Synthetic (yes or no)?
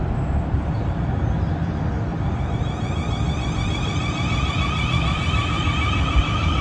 yes